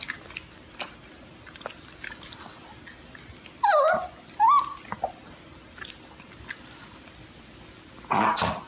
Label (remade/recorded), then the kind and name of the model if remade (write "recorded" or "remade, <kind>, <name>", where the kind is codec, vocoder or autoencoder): recorded